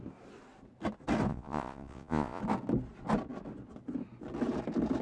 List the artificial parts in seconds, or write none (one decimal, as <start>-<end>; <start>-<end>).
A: 1.3-2.4